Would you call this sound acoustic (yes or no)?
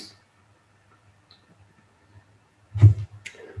yes